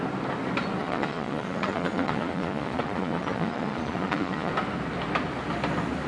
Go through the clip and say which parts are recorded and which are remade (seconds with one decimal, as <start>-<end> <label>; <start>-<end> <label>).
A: 0.0-0.8 recorded; 0.8-4.5 remade; 4.5-6.1 recorded

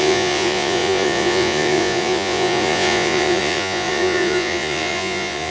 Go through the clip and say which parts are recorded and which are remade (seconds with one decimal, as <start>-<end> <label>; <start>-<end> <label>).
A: 0.0-5.5 remade

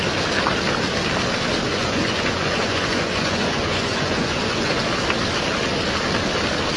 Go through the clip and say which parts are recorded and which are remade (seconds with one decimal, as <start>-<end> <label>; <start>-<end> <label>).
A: 0.0-1.7 recorded; 1.7-4.9 remade; 4.9-6.8 recorded

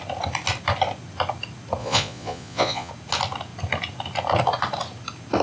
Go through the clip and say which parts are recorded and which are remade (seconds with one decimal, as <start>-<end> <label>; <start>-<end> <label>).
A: 0.0-1.8 recorded; 1.8-2.9 remade; 2.9-5.4 recorded